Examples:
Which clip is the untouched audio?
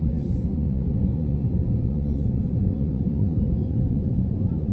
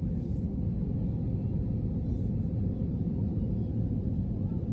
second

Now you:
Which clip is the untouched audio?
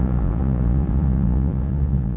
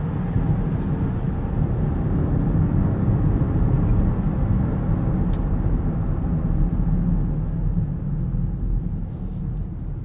second